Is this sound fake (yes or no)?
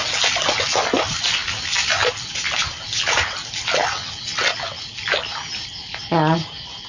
no